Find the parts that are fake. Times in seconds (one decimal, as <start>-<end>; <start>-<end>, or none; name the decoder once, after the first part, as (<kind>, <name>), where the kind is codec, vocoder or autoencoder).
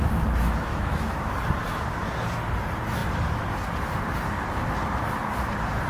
0.7-1.3 (autoencoder, DAC-VAE)